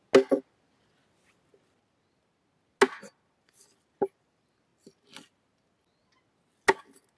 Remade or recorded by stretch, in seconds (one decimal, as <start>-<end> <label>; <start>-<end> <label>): 0.0-7.2 recorded